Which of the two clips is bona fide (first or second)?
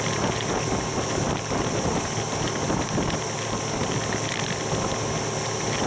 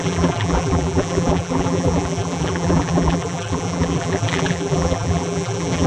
first